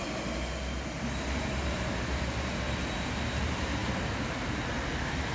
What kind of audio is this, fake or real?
real